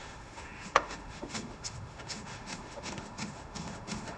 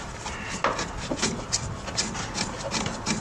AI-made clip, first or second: first